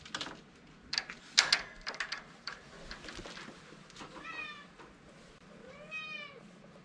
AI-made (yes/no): no